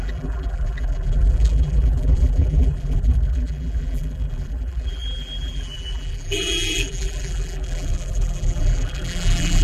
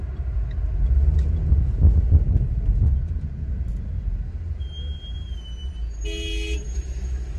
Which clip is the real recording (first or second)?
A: second